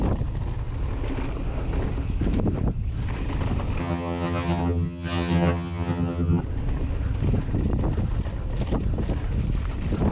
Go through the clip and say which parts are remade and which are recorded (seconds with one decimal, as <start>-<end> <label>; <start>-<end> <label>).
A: 0.0-3.8 recorded; 3.8-6.4 remade; 6.4-10.1 recorded